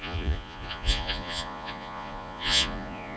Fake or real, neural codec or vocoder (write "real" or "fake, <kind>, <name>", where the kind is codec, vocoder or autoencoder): fake, vocoder, Vocos